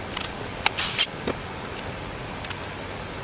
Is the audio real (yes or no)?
yes